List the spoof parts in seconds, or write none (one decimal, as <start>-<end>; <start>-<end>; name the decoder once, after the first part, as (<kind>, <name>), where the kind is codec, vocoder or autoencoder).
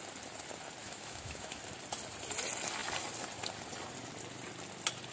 0.8-1.6 (autoencoder, DAC-VAE)